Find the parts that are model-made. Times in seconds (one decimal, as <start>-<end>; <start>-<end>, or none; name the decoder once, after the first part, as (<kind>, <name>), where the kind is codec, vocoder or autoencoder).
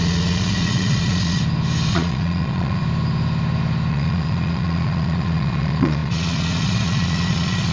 0.0-1.4 (vocoder, Vocos); 1.9-2.8; 3.9-7.7